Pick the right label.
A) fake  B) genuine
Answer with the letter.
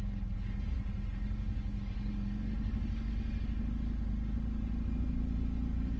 B